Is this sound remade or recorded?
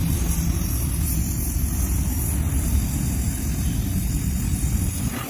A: recorded